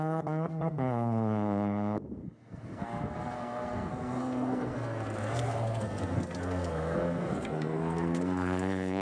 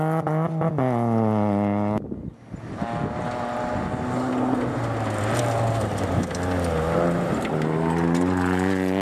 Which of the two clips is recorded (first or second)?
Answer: second